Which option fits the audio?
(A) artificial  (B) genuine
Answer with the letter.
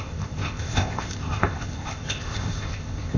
A